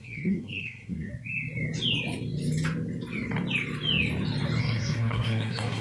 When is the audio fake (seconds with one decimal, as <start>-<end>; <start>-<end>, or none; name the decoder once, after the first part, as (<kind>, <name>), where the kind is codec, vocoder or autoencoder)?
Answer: 0.0-1.1 (codec, SNAC); 4.6-5.8